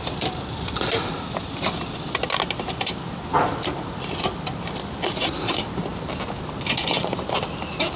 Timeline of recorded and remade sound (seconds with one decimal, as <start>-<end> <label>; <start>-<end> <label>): 0.0-8.0 recorded